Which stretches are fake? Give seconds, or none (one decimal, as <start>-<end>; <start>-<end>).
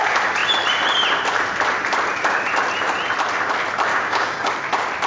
3.9-4.5